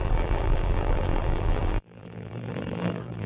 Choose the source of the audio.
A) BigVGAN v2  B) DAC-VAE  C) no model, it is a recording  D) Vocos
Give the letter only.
A